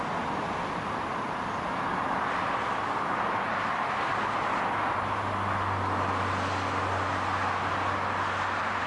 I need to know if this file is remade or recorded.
recorded